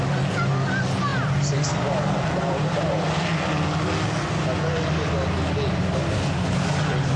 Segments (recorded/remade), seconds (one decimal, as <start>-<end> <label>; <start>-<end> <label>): 0.0-1.1 recorded; 1.1-3.5 remade; 3.5-7.2 recorded